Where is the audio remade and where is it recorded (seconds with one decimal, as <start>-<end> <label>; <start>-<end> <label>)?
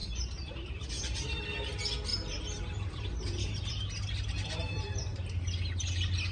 0.0-1.0 remade; 1.0-2.1 recorded; 2.1-3.7 remade; 3.7-6.3 recorded